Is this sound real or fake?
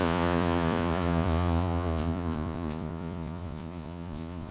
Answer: fake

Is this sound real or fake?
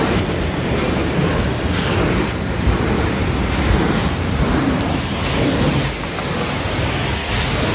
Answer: real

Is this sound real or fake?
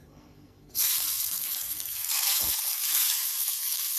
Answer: fake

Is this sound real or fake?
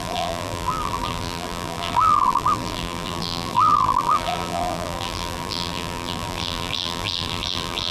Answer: fake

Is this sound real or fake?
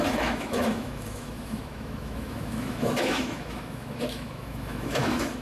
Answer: fake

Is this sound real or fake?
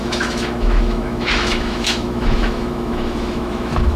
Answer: fake